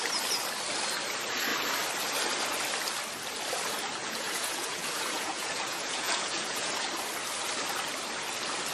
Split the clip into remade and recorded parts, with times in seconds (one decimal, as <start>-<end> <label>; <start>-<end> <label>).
0.0-4.0 recorded; 4.0-6.7 remade; 6.7-8.7 recorded